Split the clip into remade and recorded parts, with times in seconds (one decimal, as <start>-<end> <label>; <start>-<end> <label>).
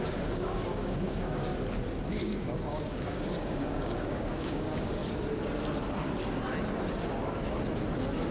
0.0-1.5 remade; 1.5-2.1 recorded; 2.1-5.0 remade; 5.0-8.3 recorded